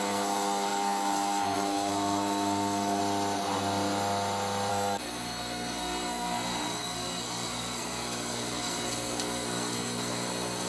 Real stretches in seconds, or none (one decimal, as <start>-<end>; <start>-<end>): 3.0-4.7